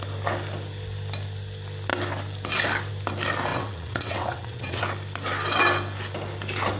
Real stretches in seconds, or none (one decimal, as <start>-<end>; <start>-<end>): 0.0-3.5; 4.8-6.8